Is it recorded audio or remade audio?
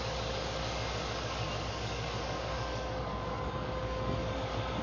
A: remade